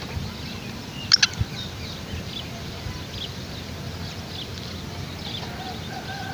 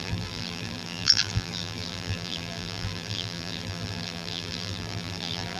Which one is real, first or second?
first